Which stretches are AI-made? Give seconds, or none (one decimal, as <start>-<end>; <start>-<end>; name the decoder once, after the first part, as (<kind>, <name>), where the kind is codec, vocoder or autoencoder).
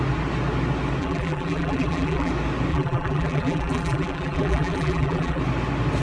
1.0-2.3 (vocoder, BigVGAN v2); 2.7-5.4